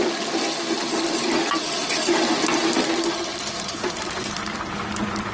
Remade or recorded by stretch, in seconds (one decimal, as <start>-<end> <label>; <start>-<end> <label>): 0.0-3.3 recorded; 3.3-5.3 remade